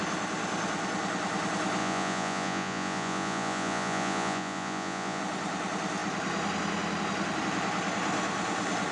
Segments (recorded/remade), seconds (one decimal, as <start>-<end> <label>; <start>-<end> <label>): 0.0-1.8 recorded; 1.8-5.2 remade; 5.2-8.9 recorded